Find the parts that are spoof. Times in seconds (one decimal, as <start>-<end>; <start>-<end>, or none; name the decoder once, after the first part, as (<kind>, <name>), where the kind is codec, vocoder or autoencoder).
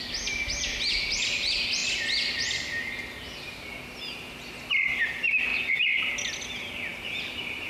none